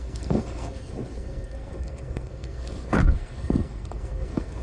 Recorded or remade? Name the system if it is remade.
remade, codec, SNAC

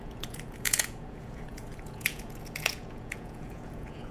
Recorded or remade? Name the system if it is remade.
remade, vocoder, Vocos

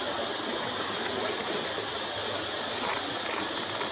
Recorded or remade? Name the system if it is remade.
recorded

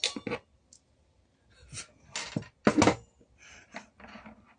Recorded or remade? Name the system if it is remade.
recorded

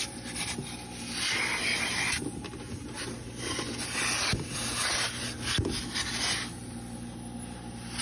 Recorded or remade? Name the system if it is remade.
recorded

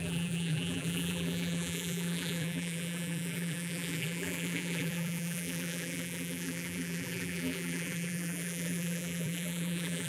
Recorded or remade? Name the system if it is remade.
remade, vocoder, BigVGAN v2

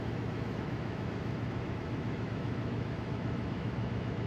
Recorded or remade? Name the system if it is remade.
remade, autoencoder, DAC-VAE